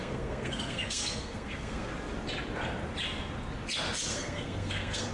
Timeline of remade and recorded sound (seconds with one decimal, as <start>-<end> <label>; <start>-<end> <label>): 0.0-1.9 remade; 1.9-4.1 recorded; 4.1-5.1 remade